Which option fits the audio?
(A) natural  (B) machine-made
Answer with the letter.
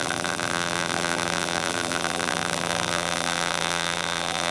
B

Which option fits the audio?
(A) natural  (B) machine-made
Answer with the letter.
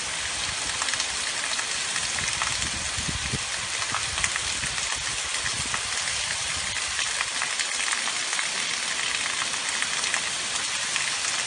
A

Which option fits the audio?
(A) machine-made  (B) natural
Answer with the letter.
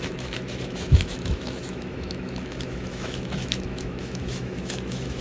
A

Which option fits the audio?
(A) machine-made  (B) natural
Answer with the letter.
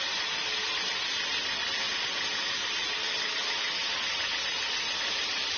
B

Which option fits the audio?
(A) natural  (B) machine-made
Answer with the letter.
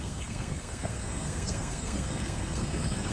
B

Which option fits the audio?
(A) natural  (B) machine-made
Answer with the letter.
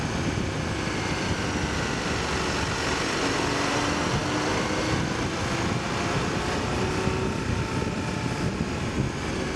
A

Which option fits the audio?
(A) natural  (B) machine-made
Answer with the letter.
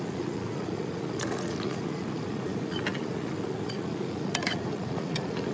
B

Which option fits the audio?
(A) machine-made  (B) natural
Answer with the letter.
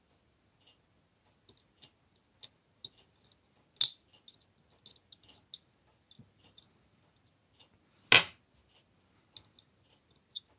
B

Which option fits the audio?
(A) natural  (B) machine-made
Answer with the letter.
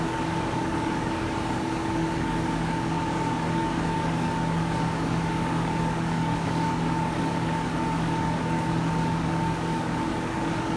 B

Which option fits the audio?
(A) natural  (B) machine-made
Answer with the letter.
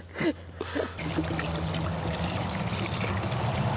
A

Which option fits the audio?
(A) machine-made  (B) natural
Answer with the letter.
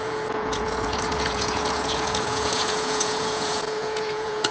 A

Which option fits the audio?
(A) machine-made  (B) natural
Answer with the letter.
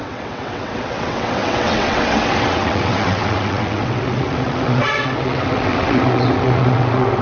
A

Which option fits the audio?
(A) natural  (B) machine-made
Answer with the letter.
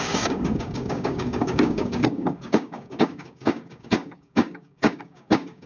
B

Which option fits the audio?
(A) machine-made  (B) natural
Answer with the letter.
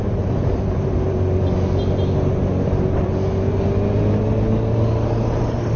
B